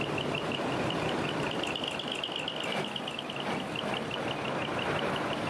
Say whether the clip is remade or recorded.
recorded